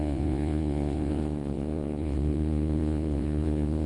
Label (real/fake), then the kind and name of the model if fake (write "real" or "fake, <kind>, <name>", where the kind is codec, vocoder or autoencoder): fake, vocoder, Vocos